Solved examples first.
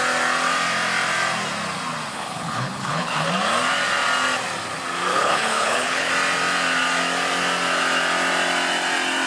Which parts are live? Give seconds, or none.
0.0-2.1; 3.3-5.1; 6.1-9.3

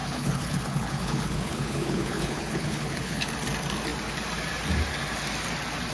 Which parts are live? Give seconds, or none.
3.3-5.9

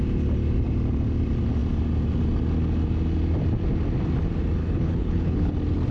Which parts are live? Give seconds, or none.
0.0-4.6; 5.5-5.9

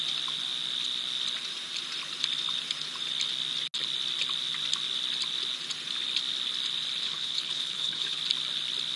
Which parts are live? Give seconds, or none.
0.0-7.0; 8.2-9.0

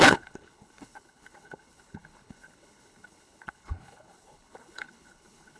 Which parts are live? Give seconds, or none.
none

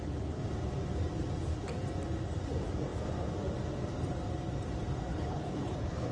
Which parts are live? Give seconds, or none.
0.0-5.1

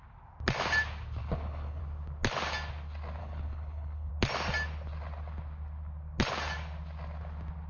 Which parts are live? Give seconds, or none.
0.0-1.2; 1.8-3.2; 4.1-7.7

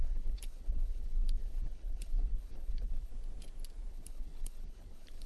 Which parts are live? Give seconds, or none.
3.1-3.9